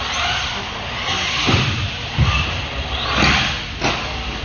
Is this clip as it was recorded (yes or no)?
yes